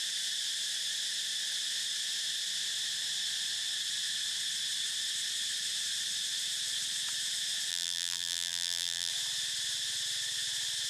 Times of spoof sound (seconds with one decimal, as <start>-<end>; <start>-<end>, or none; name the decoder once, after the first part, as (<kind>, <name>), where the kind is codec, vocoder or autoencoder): 7.7-9.1 (vocoder, BigVGAN v2)